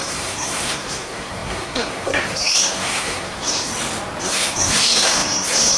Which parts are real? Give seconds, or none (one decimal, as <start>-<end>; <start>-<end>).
3.7-4.2